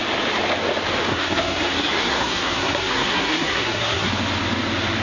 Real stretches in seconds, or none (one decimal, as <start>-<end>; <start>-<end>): 0.0-1.1; 4.1-5.0